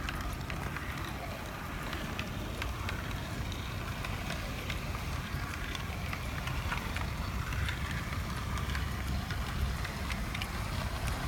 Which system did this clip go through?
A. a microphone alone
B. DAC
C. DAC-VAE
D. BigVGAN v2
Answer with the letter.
A